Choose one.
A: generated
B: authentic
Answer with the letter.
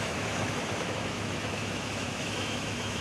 A